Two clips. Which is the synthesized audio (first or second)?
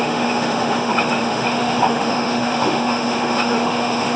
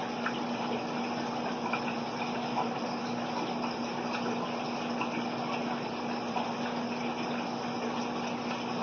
first